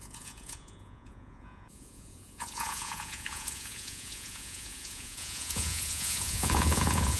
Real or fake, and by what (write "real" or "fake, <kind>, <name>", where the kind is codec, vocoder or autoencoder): fake, vocoder, Vocos